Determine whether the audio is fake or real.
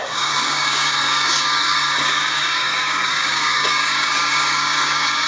fake